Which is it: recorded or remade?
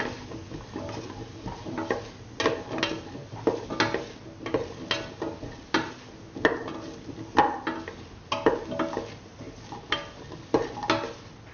recorded